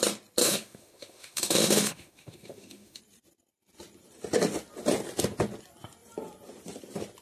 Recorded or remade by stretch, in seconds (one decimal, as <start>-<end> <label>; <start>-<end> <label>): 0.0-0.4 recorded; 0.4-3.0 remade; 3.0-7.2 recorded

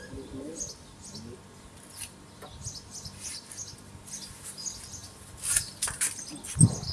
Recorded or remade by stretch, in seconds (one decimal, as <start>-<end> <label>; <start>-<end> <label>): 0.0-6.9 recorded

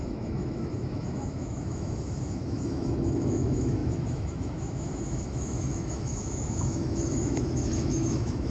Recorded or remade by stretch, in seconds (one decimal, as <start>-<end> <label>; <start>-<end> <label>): 0.0-8.5 remade

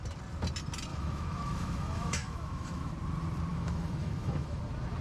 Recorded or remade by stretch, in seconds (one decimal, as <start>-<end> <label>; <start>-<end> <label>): 0.0-0.9 recorded; 0.9-2.9 remade; 2.9-3.5 recorded; 3.5-4.6 remade; 4.6-5.0 recorded

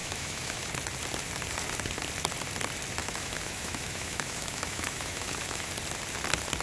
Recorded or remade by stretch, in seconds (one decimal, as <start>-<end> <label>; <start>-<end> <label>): 0.0-0.7 remade; 0.7-3.0 recorded; 3.0-5.7 remade; 5.7-6.6 recorded